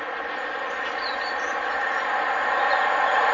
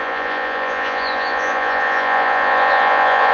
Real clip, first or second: first